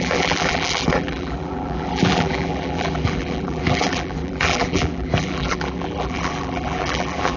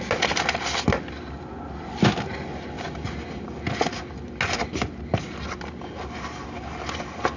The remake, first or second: first